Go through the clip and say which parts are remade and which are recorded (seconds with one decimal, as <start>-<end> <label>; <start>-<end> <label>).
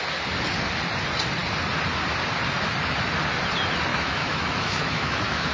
0.0-3.9 recorded; 3.9-5.5 remade